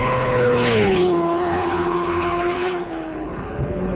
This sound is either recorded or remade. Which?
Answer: remade